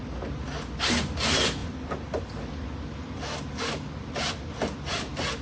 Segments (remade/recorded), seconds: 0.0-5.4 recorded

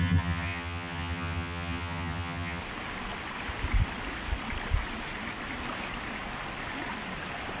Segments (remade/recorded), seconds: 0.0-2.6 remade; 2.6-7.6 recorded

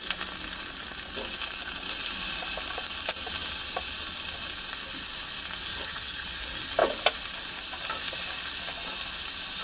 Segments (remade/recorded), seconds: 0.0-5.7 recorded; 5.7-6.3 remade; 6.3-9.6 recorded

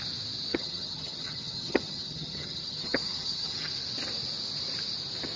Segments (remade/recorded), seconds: 0.0-0.5 recorded; 0.5-3.7 remade; 3.7-5.4 recorded

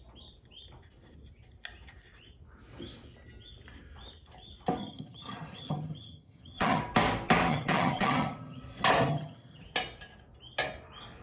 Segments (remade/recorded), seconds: 0.0-4.8 recorded; 4.8-6.8 remade; 6.8-7.5 recorded; 7.5-8.6 remade; 8.6-9.1 recorded; 9.1-9.6 remade; 9.6-11.2 recorded